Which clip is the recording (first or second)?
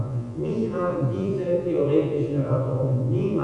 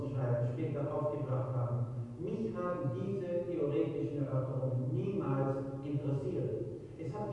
second